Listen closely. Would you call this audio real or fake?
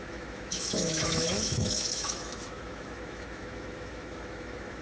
fake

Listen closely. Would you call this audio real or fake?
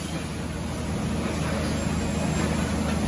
real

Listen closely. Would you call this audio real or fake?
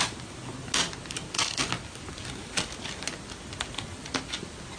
real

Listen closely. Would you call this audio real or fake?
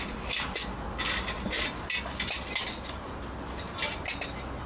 real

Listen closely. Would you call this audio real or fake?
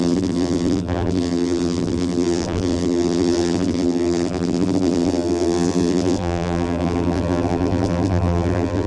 fake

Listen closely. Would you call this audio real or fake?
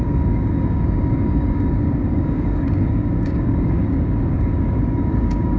fake